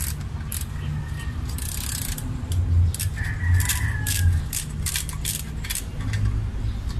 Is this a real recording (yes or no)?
yes